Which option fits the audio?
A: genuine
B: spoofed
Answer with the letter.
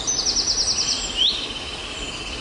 A